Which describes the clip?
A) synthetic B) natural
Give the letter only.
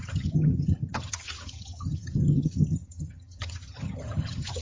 A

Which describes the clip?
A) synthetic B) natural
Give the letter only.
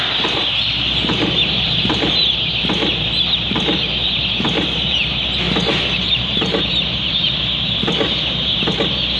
A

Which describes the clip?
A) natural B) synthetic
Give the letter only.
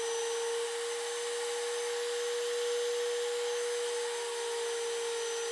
A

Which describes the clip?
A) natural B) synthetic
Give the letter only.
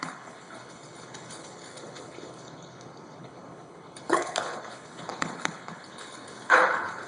B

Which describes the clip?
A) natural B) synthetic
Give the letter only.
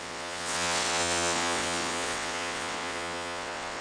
B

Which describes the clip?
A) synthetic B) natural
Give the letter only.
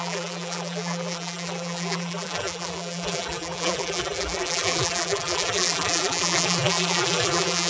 A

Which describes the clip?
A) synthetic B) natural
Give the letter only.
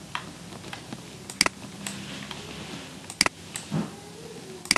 B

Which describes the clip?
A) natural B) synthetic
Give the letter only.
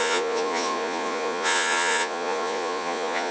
B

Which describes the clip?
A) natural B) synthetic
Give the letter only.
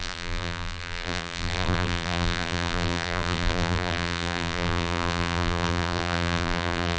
B